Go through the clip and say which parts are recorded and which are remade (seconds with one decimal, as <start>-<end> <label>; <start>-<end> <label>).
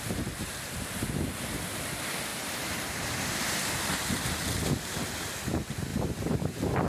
0.0-2.3 recorded; 2.3-3.7 remade; 3.7-5.9 recorded; 5.9-6.9 remade